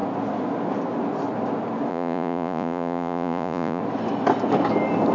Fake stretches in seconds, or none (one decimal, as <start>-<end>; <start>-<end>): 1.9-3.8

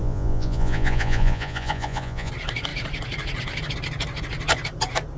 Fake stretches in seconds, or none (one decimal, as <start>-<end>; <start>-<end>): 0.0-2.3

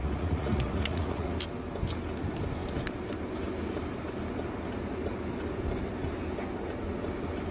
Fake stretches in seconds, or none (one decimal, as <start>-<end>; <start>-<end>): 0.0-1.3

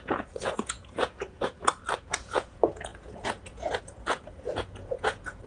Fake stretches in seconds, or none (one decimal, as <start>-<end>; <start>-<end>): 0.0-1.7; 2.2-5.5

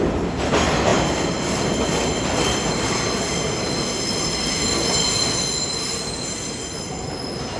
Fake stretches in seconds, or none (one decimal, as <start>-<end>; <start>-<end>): none